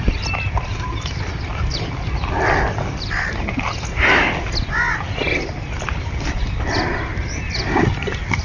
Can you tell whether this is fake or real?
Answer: real